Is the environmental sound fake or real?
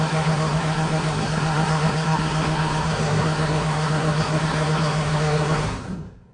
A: fake